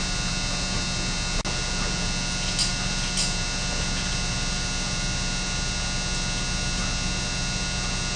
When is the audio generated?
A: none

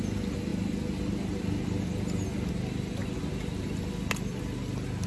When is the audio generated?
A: none

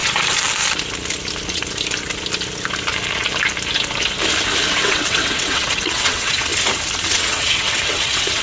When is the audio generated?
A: 4.7-6.5; 7.1-8.4

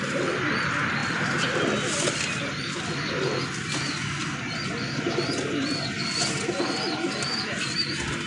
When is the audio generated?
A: none